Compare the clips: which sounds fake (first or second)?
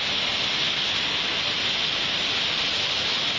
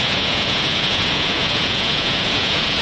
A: second